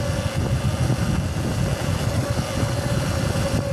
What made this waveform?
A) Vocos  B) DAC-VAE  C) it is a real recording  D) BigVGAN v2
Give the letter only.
C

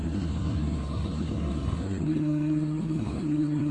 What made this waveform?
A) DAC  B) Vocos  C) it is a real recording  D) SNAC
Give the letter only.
D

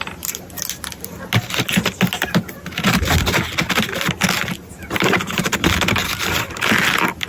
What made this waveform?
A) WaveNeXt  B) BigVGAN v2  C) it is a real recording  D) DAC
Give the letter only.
C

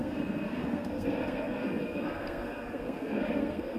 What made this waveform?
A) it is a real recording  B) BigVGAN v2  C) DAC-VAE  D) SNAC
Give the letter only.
D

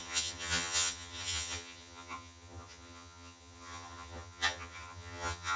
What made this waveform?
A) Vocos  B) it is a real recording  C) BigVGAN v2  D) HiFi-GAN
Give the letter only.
D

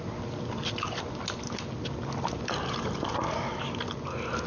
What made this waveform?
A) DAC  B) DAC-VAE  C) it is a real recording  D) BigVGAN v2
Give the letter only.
C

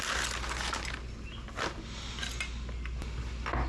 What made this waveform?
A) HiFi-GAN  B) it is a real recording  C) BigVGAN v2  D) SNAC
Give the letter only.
B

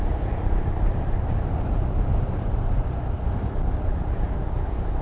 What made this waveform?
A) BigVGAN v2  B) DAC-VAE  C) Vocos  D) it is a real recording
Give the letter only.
D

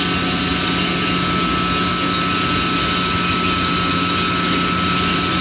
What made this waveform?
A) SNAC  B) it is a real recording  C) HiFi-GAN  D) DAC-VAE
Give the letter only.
B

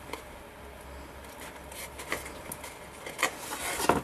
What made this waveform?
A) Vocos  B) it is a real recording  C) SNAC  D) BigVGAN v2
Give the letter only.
B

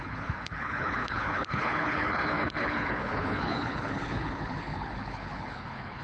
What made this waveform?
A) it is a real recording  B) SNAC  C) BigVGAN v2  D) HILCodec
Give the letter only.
D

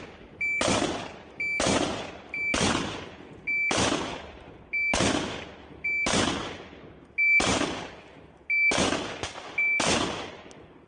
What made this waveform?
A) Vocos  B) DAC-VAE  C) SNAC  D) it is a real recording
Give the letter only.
D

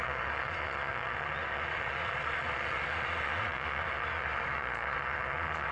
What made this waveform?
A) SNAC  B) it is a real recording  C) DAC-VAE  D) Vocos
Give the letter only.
D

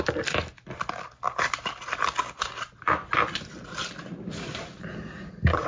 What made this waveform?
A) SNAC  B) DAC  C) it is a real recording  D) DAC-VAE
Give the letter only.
C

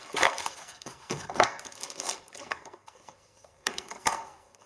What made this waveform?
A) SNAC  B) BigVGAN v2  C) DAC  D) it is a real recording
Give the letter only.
A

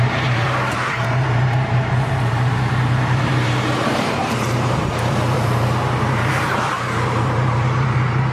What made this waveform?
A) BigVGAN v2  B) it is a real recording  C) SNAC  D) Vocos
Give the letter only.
A